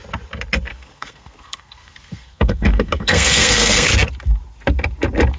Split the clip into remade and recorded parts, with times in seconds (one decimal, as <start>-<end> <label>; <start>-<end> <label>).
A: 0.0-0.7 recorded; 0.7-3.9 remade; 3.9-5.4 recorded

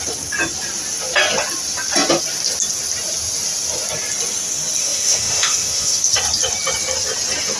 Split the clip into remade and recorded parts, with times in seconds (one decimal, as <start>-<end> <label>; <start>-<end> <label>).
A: 0.0-4.8 recorded; 4.8-6.0 remade; 6.0-7.6 recorded

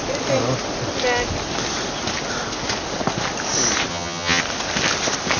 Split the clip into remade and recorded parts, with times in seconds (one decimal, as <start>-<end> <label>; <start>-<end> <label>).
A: 0.0-3.9 recorded; 3.9-4.4 remade; 4.4-5.4 recorded

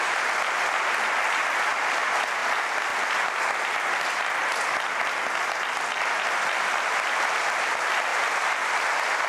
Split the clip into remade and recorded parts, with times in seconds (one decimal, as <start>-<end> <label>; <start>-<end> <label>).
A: 0.0-2.4 remade; 2.4-3.3 recorded; 3.3-4.4 remade; 4.4-6.0 recorded; 6.0-8.1 remade; 8.1-8.9 recorded; 8.9-9.3 remade

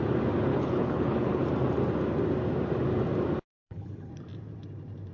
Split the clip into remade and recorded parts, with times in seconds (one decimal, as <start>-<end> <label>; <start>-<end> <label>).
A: 0.0-0.5 recorded; 0.5-1.4 remade; 1.4-3.5 recorded; 3.5-4.1 remade; 4.1-5.1 recorded